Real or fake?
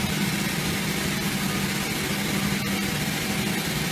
real